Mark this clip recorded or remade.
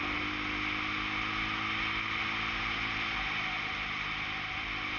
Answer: recorded